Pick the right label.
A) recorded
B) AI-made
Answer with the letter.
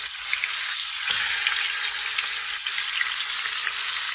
A